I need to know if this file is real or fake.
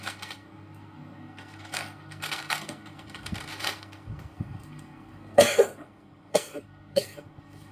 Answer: fake